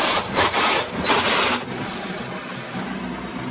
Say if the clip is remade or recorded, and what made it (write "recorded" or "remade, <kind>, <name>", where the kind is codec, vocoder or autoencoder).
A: recorded